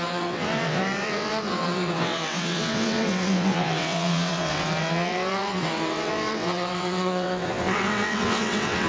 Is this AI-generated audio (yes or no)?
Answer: yes